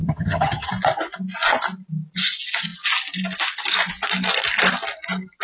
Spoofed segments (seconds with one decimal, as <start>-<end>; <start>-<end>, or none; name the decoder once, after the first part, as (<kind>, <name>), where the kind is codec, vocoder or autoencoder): 0.0-0.7 (vocoder, HiFi-GAN)